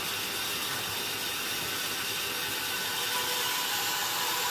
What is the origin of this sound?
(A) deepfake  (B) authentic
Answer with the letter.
B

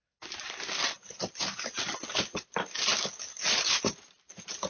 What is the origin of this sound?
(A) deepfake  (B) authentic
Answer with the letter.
B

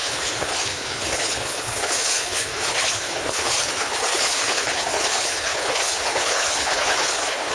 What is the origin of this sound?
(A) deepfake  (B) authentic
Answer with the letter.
A